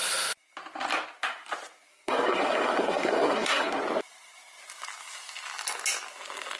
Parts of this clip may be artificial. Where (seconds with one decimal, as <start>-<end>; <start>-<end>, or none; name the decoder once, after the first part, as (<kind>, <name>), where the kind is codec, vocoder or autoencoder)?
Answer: 1.9-3.8 (codec, SNAC)